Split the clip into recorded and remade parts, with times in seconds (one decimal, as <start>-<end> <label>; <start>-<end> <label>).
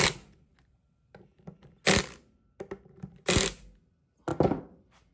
0.0-5.1 recorded